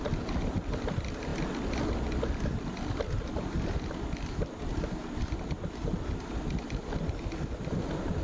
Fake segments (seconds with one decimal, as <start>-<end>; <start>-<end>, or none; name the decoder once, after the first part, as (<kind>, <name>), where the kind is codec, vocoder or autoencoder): none